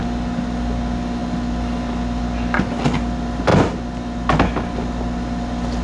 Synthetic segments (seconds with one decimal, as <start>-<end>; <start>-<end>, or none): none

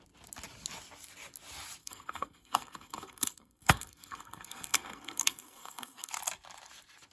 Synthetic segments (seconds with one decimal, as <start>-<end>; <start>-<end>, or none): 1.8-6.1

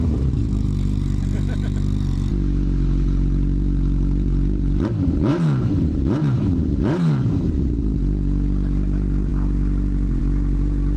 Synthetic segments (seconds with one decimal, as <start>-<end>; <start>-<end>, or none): 0.4-2.3; 5.3-7.5

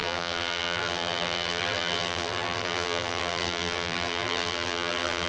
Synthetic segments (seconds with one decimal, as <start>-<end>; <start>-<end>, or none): 0.0-5.3

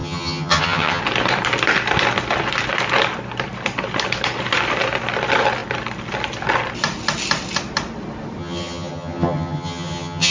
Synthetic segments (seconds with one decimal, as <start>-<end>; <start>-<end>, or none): 0.0-1.0; 8.4-10.3